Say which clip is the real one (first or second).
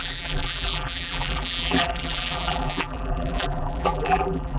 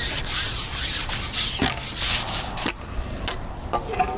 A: second